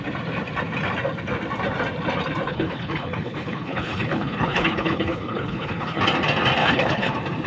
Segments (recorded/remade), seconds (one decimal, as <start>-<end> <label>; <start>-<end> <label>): 0.0-2.5 recorded; 2.5-6.0 remade; 6.0-6.6 recorded; 6.6-7.1 remade; 7.1-7.5 recorded